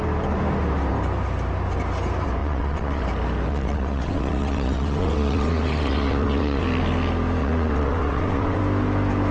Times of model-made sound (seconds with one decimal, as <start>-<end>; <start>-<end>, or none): 2.4-3.0; 3.5-6.6; 7.4-8.6